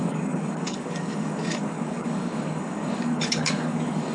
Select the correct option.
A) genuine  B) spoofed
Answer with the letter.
B